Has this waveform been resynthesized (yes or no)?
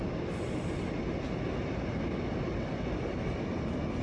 no